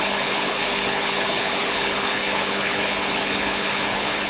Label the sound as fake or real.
fake